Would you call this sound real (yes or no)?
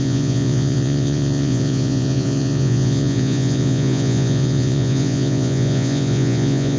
no